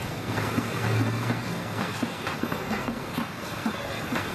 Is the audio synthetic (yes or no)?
yes